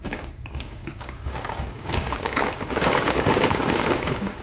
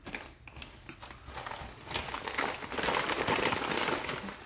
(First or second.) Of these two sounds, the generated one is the first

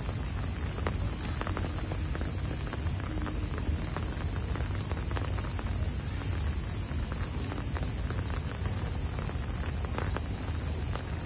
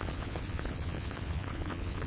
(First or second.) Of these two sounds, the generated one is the second